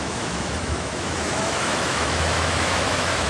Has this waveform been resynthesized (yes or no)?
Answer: yes